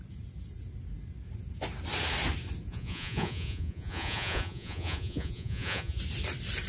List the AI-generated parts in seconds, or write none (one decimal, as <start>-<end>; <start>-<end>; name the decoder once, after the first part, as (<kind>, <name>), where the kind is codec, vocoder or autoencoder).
2.7-6.0 (vocoder, Vocos)